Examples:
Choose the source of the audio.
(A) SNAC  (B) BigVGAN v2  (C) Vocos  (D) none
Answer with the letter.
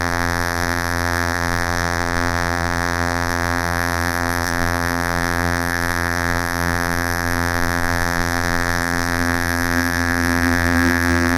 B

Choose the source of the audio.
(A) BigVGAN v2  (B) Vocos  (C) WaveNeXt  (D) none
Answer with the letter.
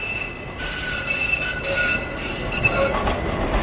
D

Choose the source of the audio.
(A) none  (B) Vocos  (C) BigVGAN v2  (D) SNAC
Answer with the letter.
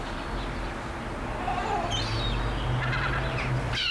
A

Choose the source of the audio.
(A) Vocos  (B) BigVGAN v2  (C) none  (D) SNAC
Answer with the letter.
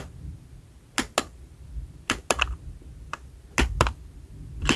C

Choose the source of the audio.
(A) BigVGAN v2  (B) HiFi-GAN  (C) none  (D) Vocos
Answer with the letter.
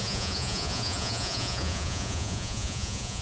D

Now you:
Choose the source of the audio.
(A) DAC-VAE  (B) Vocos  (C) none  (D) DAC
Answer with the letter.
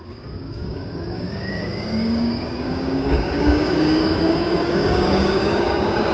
D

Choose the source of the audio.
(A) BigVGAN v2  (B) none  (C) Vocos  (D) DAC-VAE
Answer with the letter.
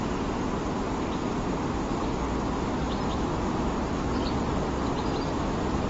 B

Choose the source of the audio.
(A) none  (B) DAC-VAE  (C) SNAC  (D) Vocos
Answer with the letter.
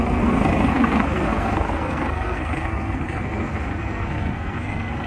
C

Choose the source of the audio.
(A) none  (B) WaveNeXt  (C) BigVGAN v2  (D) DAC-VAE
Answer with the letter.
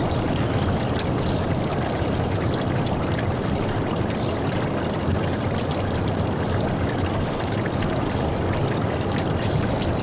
A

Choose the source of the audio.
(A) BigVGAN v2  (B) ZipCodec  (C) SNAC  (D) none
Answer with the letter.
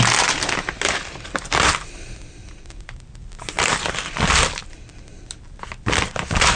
D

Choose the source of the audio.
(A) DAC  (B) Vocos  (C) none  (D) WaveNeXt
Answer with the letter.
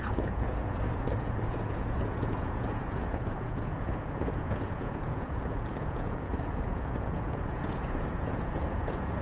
B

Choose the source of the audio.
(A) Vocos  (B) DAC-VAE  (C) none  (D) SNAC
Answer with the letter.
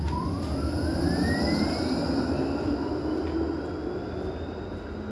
C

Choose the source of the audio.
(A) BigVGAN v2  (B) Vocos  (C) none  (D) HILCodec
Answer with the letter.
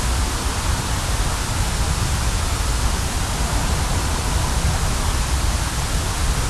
C